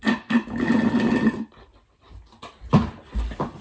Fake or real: real